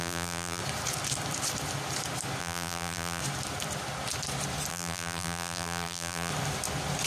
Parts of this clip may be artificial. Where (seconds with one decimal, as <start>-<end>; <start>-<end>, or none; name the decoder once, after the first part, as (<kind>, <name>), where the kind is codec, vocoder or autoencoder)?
0.0-0.6 (vocoder, BigVGAN v2); 2.4-3.2; 4.7-6.3